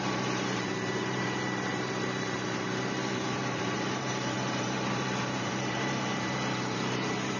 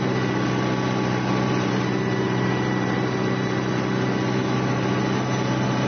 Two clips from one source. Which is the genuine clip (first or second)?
second